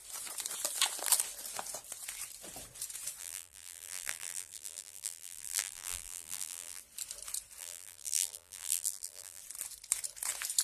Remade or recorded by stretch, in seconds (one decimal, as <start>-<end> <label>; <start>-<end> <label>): 0.0-3.2 recorded; 3.2-6.8 remade; 6.8-7.6 recorded; 7.6-9.4 remade; 9.4-10.6 recorded